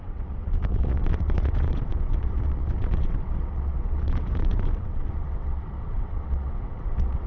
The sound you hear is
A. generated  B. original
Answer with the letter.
A